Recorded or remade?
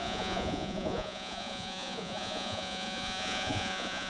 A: remade